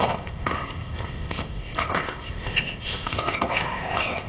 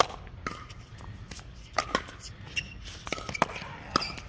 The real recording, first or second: second